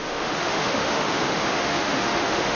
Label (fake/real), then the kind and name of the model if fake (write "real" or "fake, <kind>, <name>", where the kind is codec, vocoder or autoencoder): fake, autoencoder, DAC-VAE